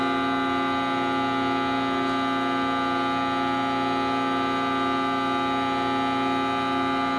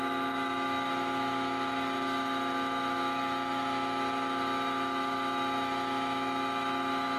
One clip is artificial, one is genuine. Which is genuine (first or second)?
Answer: first